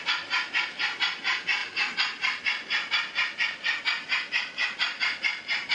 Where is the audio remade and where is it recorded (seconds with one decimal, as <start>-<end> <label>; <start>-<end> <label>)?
0.0-5.7 recorded